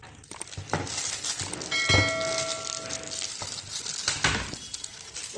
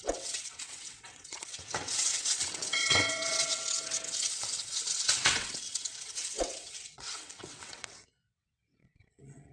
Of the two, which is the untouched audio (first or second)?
first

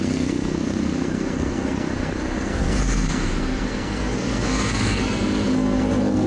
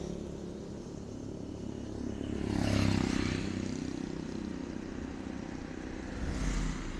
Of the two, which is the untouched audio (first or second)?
second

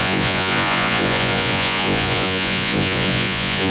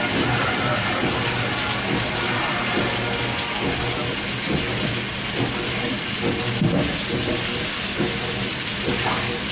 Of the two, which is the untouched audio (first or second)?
second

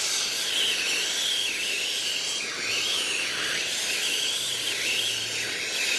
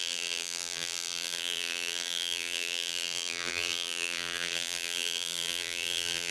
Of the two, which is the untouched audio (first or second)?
first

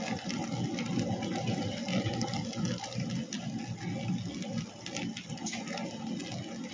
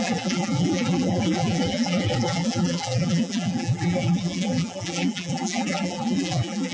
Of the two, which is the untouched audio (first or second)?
first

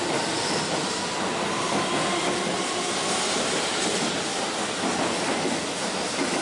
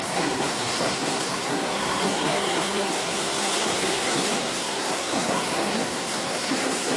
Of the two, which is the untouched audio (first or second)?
first